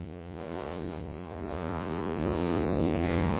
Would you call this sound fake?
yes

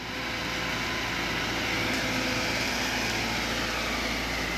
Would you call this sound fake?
no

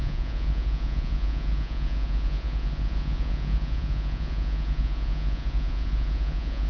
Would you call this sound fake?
yes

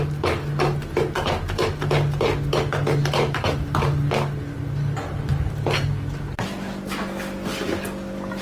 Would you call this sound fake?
no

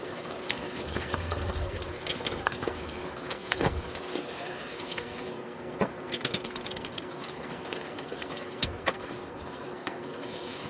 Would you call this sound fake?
yes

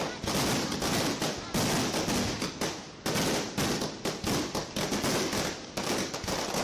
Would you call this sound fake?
no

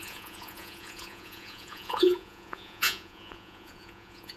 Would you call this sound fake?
yes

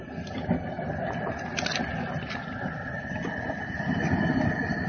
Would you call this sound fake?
no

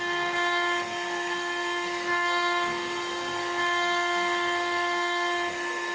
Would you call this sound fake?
yes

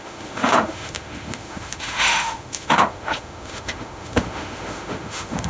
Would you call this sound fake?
yes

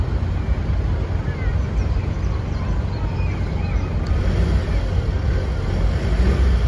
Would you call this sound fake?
no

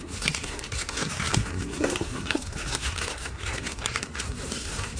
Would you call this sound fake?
yes